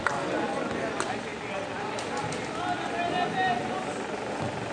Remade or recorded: recorded